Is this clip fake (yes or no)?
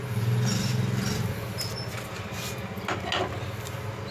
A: no